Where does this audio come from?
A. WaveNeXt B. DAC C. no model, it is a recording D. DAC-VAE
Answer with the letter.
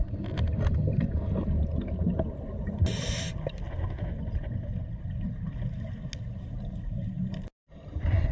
C